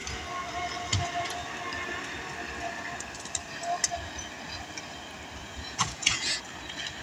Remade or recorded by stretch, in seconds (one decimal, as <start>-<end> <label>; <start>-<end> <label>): 0.0-5.4 recorded; 5.4-6.4 remade; 6.4-7.0 recorded